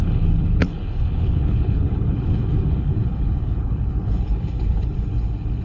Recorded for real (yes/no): no